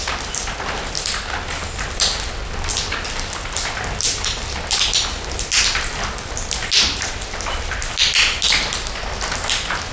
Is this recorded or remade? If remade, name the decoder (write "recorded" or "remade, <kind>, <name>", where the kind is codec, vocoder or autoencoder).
recorded